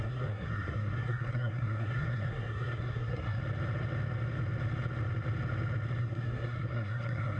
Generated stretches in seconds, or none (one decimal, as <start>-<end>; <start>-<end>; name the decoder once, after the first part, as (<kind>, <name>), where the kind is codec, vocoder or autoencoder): 0.0-3.4 (codec, SNAC); 6.0-7.4